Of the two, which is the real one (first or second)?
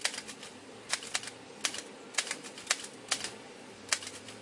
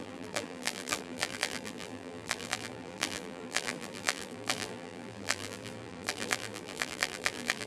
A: first